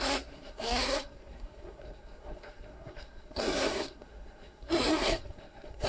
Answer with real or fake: fake